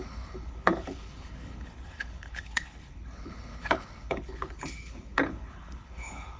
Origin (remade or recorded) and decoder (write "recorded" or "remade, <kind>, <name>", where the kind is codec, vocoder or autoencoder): remade, codec, HILCodec